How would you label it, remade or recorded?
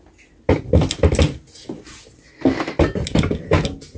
recorded